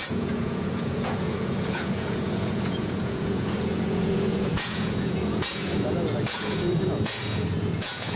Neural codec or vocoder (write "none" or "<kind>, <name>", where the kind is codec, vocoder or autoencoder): vocoder, Vocos